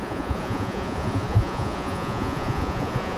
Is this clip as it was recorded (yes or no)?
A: no